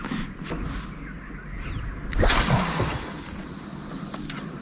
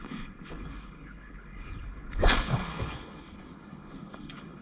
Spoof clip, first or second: second